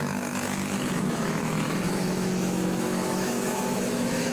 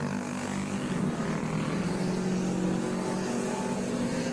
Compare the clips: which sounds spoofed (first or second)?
first